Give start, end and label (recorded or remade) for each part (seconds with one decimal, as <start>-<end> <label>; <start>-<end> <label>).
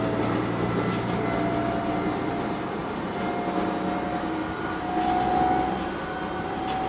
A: 0.0-6.9 recorded